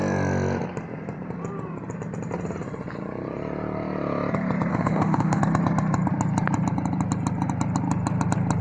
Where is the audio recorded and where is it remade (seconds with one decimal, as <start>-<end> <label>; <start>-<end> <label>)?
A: 0.0-4.7 recorded; 4.7-5.4 remade; 5.4-8.6 recorded